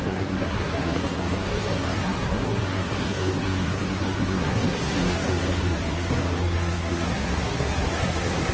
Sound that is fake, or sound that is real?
fake